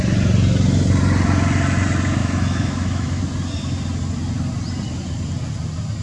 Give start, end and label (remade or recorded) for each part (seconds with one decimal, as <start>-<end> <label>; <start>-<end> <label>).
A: 0.0-2.2 recorded; 2.2-3.2 remade; 3.2-6.0 recorded